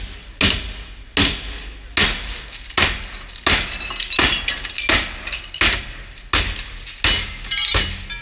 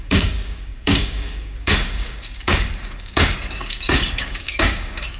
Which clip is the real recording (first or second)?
first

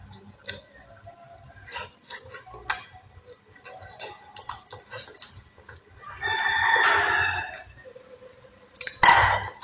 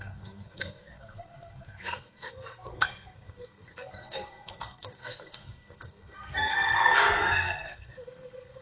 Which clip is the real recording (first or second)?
first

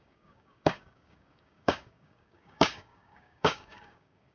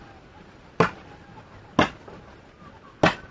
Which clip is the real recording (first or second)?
second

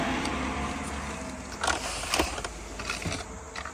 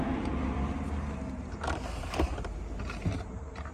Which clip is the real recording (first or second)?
first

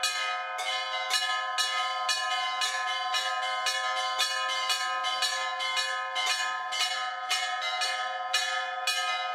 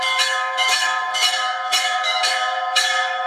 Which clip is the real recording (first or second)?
first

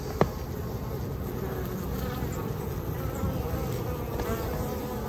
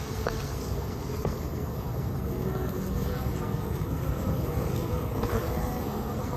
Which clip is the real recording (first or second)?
first